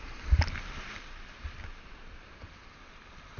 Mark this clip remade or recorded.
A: recorded